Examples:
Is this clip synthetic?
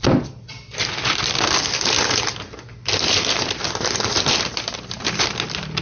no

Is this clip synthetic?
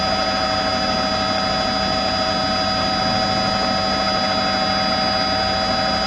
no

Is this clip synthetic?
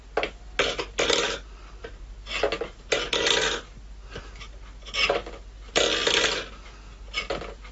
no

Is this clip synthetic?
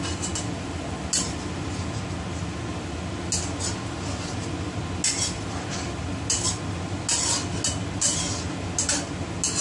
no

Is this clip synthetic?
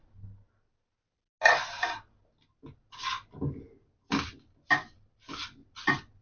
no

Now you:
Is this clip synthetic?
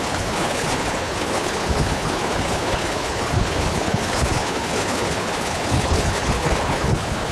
yes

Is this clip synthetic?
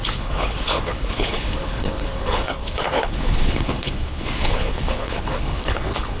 yes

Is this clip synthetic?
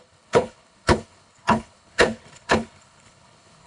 yes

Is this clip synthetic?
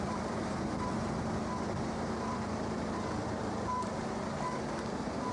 no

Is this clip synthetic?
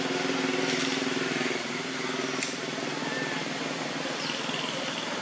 no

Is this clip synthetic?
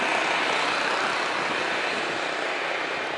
no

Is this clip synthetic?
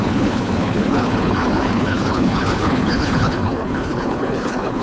yes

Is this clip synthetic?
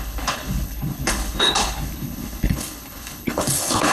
yes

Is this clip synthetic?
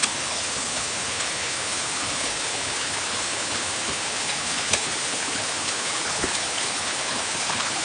yes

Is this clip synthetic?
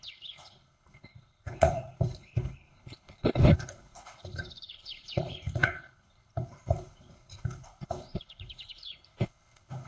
yes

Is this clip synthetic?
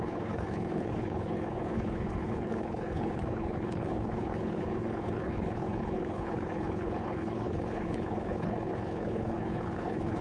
yes